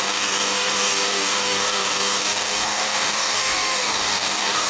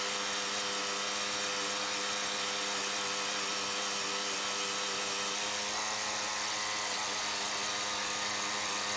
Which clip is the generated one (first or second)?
first